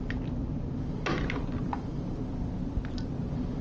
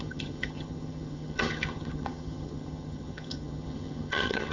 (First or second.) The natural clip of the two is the first